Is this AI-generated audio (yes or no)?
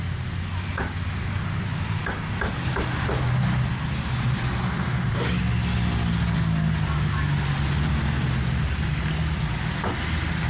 no